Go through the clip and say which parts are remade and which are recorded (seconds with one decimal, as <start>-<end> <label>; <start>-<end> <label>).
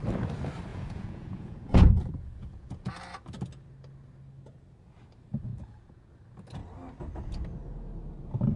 0.0-0.7 recorded; 0.7-2.9 remade; 2.9-5.5 recorded; 5.5-6.1 remade; 6.1-8.6 recorded